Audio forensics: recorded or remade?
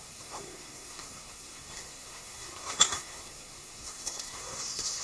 remade